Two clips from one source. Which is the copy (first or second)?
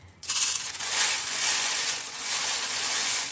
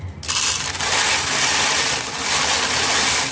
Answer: first